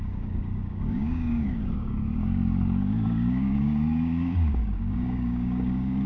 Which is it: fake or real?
fake